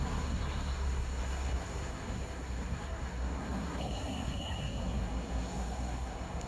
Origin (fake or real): fake